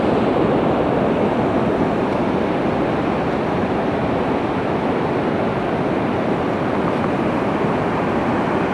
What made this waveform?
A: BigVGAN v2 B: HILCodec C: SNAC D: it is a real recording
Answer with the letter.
D